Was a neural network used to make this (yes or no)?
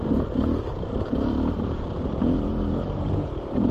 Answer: no